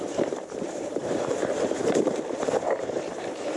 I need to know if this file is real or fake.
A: fake